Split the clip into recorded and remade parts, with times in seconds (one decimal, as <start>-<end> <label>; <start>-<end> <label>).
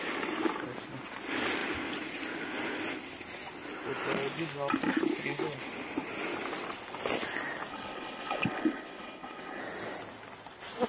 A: 0.0-7.7 recorded; 7.7-9.6 remade; 9.6-10.9 recorded